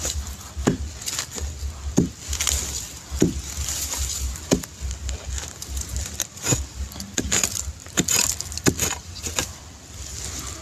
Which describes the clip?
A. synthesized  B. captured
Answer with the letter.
A